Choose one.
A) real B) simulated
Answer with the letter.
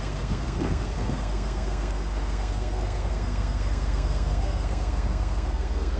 B